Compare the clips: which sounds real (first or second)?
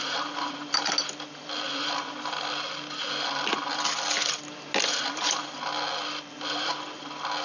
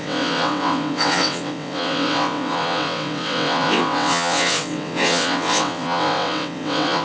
first